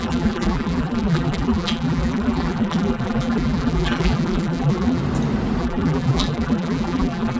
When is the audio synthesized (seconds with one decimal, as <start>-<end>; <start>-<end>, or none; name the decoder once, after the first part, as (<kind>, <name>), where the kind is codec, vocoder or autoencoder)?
0.0-5.0 (vocoder, BigVGAN v2); 5.6-7.4